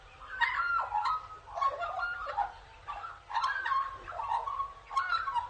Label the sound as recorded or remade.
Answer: recorded